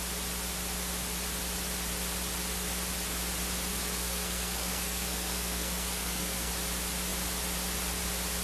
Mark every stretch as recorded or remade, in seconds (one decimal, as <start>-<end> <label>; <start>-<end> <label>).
0.0-3.7 recorded; 3.7-6.5 remade; 6.5-8.4 recorded